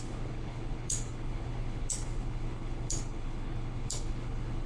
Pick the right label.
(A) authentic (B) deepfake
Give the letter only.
B